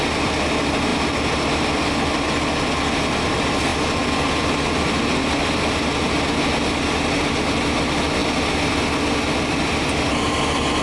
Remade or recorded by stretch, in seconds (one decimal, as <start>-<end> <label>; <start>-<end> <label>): 0.0-10.8 recorded